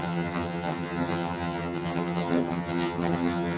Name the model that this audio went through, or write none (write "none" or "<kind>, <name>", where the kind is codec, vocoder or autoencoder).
vocoder, HiFi-GAN